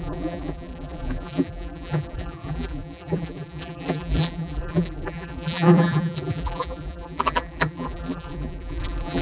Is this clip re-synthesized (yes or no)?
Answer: yes